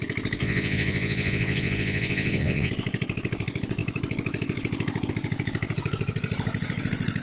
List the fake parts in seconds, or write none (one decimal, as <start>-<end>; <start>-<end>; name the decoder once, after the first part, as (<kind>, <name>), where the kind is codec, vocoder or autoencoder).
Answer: 0.4-2.7 (vocoder, Vocos)